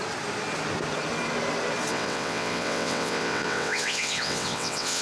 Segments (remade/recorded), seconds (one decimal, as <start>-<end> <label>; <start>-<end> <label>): 0.0-1.9 recorded; 1.9-5.0 remade